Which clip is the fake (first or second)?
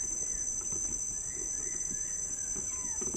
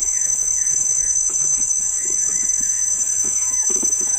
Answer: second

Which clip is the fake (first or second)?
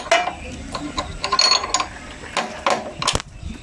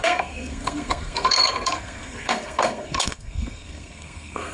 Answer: second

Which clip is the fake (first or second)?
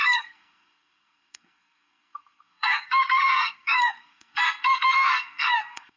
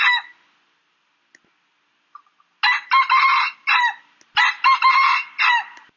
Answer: first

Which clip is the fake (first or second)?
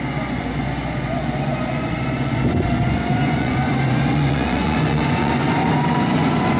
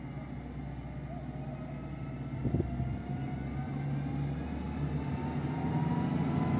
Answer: first